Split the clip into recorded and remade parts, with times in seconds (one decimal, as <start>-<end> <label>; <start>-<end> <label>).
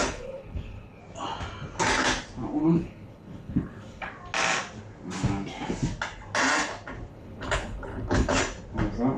0.0-1.0 remade; 1.0-2.6 recorded; 2.6-4.1 remade; 4.1-7.1 recorded; 7.1-8.4 remade; 8.4-9.2 recorded